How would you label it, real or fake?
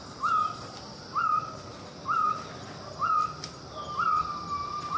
real